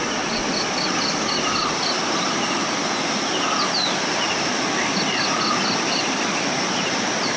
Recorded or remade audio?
recorded